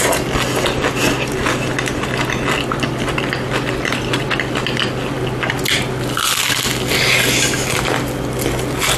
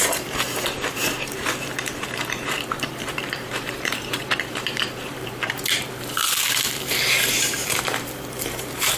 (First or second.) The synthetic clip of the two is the second